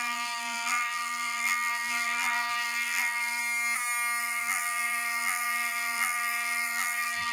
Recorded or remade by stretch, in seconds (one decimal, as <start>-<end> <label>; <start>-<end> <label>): 0.0-3.4 remade; 3.4-4.2 recorded; 4.2-7.3 remade